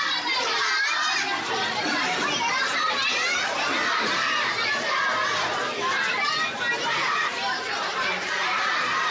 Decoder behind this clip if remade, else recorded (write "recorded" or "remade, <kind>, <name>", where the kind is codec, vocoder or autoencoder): remade, vocoder, BigVGAN v2